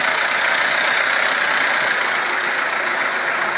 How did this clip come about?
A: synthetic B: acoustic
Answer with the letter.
B